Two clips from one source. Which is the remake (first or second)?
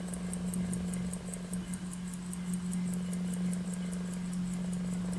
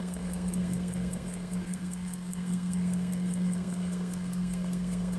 second